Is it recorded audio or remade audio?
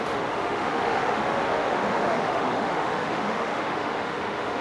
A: remade